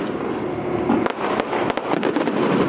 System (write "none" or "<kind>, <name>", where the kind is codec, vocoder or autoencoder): none